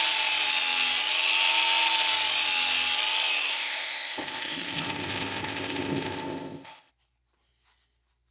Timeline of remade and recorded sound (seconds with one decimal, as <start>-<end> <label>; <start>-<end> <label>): 0.0-3.5 recorded; 3.5-6.9 remade; 6.9-8.3 recorded